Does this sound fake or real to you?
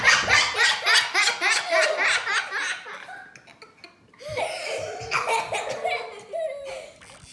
real